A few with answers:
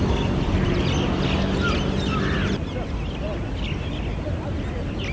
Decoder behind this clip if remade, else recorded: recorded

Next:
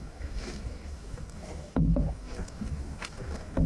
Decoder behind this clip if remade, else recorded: remade, codec, DAC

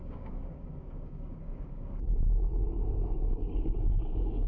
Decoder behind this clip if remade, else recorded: remade, codec, DAC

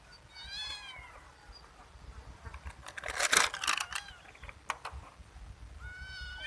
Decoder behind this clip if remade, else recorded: recorded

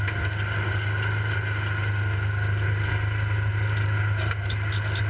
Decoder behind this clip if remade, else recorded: recorded